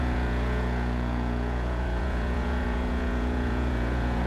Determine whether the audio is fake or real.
fake